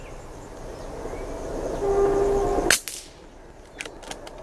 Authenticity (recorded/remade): recorded